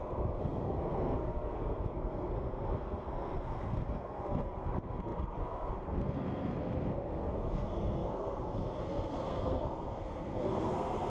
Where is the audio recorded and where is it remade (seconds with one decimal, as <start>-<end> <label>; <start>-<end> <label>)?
0.0-11.1 remade